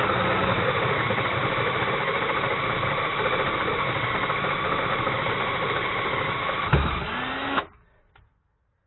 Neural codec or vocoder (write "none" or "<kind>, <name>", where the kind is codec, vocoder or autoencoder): none